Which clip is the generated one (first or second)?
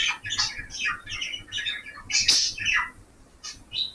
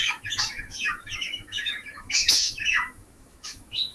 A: second